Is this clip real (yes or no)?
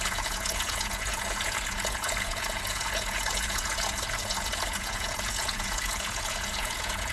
no